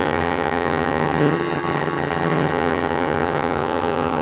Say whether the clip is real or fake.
fake